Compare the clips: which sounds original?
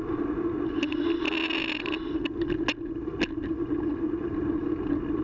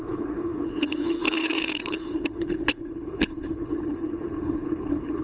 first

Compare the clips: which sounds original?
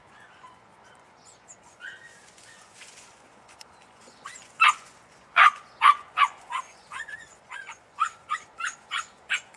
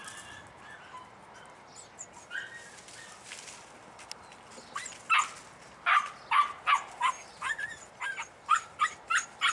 second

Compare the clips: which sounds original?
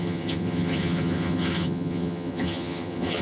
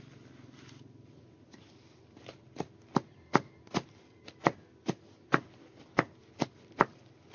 second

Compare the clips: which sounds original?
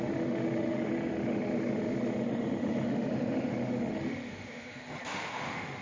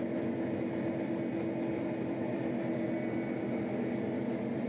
second